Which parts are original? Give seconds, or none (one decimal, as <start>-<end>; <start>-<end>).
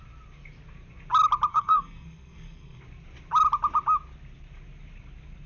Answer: 0.0-1.5; 2.8-5.5